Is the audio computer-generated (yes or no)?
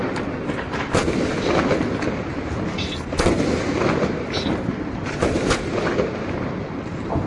no